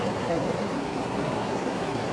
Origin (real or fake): fake